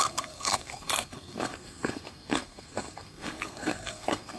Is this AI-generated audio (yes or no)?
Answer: yes